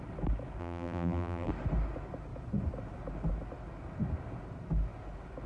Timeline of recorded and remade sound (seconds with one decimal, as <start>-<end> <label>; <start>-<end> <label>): 0.0-0.6 recorded; 0.6-1.5 remade; 1.5-5.5 recorded